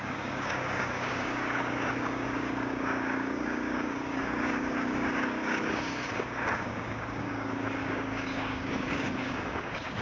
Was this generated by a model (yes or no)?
yes